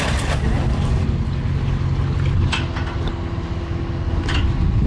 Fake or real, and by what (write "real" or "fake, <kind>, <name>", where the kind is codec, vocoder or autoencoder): real